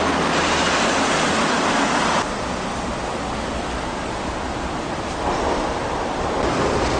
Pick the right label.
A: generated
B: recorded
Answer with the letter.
B